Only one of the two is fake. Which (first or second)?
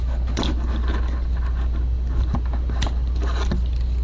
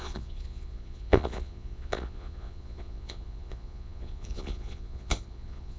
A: second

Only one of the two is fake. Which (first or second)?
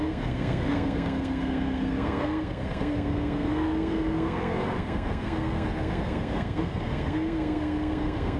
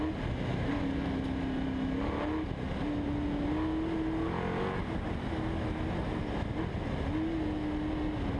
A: first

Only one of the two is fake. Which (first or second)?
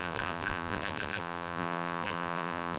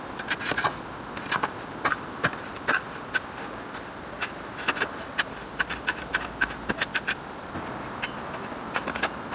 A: first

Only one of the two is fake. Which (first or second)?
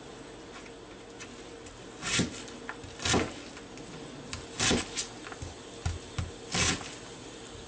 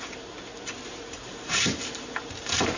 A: second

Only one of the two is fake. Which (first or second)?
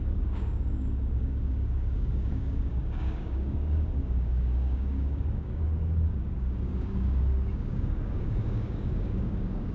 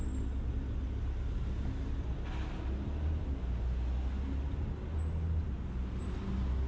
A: first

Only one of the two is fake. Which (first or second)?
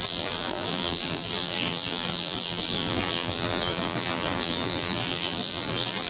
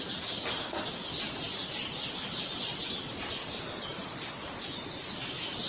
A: first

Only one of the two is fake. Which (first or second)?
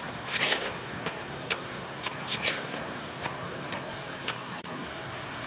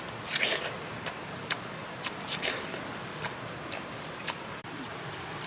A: first